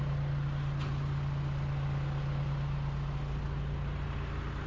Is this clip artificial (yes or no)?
no